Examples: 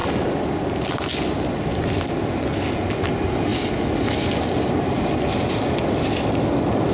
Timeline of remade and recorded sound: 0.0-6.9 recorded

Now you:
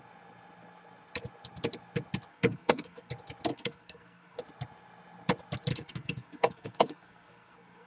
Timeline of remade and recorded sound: 0.0-2.3 recorded; 2.3-3.1 remade; 3.1-3.5 recorded; 3.5-4.4 remade; 4.4-5.7 recorded; 5.7-7.9 remade

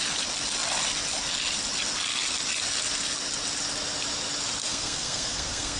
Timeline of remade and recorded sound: 0.0-4.6 recorded; 4.6-5.8 remade

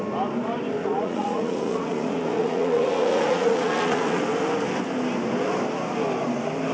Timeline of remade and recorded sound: 0.0-0.8 recorded; 0.8-4.2 remade; 4.2-6.7 recorded

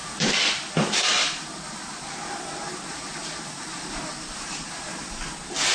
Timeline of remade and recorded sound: 0.0-5.7 recorded

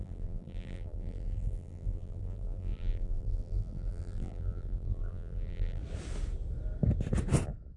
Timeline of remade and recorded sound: 0.0-5.8 remade; 5.8-7.8 recorded

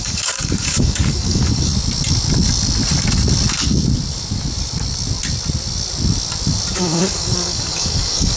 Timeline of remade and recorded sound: 0.0-1.7 remade; 1.7-6.7 recorded; 6.7-8.4 remade

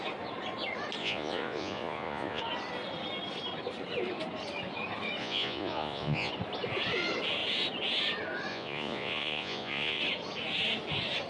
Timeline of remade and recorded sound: 0.0-1.0 recorded; 1.0-2.4 remade; 2.4-5.2 recorded; 5.2-6.3 remade; 6.3-8.5 recorded; 8.5-10.0 remade; 10.0-11.3 recorded